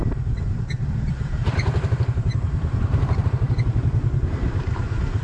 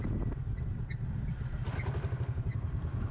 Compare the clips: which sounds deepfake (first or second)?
first